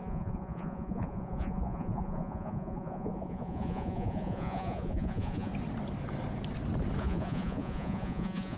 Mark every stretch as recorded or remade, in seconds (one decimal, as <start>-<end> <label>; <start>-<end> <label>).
0.0-5.5 remade; 5.5-7.0 recorded; 7.0-8.6 remade